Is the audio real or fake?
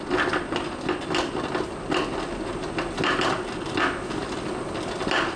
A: real